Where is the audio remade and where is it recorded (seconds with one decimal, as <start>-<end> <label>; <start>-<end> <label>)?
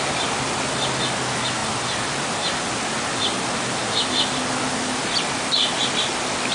0.0-6.5 recorded